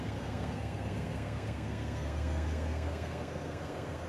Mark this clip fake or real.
fake